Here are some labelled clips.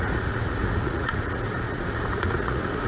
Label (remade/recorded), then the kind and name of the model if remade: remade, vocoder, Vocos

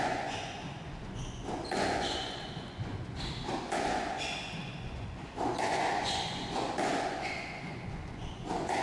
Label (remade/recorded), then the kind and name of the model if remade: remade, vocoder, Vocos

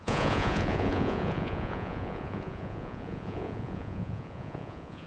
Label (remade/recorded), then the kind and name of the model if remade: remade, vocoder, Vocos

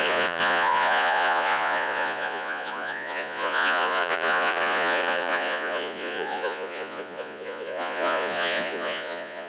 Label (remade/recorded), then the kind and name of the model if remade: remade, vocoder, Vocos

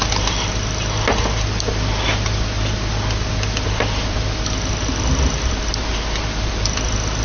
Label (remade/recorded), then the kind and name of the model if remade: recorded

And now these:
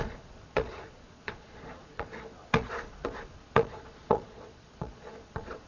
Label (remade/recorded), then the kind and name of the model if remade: remade, vocoder, Vocos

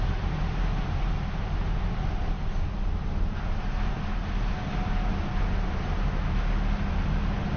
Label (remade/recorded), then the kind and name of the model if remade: recorded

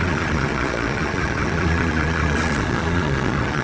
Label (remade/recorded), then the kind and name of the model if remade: remade, vocoder, Vocos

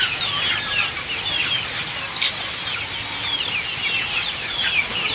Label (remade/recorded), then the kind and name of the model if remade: recorded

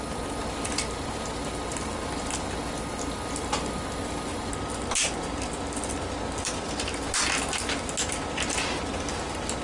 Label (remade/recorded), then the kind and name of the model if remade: recorded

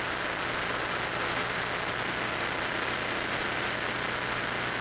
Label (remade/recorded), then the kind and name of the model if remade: recorded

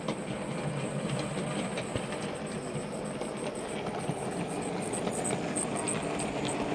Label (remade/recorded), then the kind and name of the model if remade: recorded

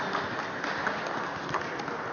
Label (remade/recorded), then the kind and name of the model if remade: recorded